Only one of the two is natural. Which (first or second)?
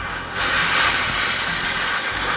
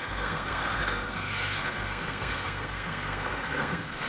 first